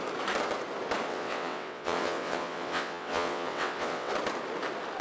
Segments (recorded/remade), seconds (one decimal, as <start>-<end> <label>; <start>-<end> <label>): 0.0-1.1 recorded; 1.1-4.1 remade; 4.1-5.0 recorded